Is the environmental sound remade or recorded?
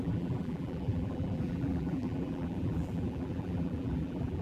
remade